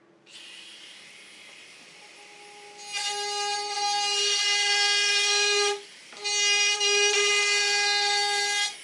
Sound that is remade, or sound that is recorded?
recorded